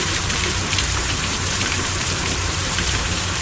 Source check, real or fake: fake